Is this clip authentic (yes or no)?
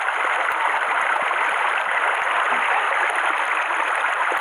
no